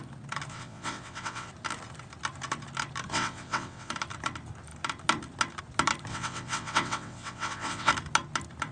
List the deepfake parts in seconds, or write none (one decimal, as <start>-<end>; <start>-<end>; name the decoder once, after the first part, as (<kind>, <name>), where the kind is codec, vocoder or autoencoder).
0.5-1.5 (vocoder, WaveNeXt); 3.1-3.9; 6.1-7.9